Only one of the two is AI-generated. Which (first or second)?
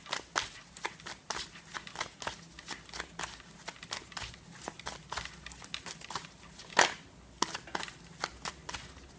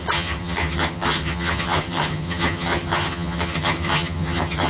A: second